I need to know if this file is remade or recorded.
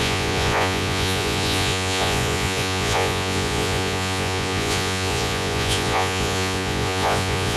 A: remade